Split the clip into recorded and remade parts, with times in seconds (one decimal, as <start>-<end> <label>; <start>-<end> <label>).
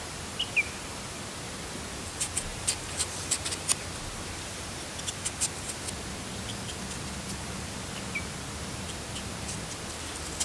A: 0.0-2.5 recorded; 2.5-3.8 remade; 3.8-10.4 recorded